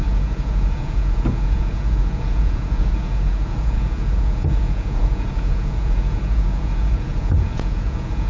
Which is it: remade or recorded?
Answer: remade